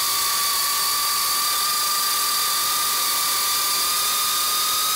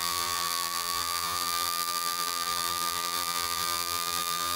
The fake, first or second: second